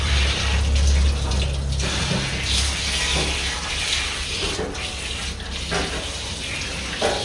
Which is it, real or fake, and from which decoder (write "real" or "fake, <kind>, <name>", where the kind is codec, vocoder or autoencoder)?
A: real